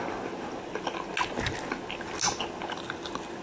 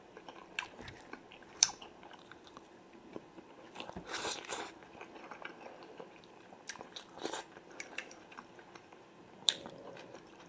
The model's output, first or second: second